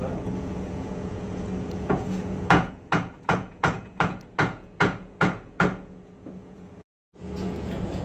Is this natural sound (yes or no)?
no